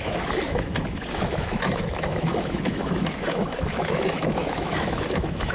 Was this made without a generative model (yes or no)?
no